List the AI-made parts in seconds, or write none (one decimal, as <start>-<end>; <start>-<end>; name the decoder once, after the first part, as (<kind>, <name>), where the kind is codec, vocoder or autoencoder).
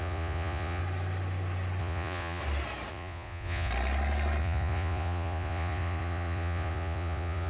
0.0-0.8 (vocoder, Vocos); 1.8-2.4; 2.9-3.7; 4.4-7.5